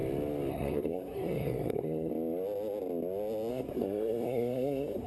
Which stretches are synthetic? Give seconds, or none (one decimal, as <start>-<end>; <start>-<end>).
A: 0.5-2.1; 3.5-5.1